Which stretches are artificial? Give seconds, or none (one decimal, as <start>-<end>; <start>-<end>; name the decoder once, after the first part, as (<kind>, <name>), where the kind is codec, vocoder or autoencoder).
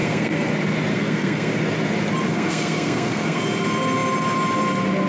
0.0-0.5 (codec, SNAC); 0.9-1.5; 2.3-3.4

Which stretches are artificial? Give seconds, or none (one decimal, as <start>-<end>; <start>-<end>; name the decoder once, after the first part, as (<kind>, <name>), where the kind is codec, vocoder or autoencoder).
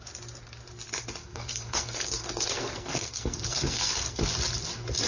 1.2-4.2 (codec, SNAC)